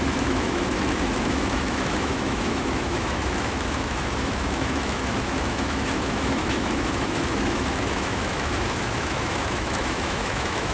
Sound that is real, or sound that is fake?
fake